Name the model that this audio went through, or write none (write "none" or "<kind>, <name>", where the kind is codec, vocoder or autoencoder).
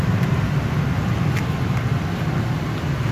none